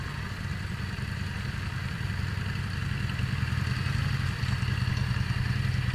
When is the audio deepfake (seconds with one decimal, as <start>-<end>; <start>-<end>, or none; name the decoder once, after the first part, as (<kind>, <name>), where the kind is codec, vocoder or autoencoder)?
none